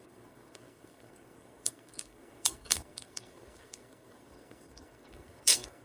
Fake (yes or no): yes